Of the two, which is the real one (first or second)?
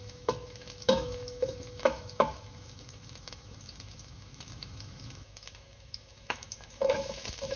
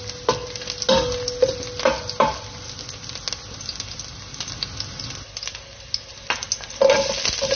second